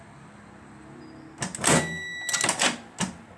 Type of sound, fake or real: real